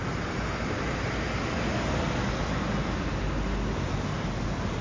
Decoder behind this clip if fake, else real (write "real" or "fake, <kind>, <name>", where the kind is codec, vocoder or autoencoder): real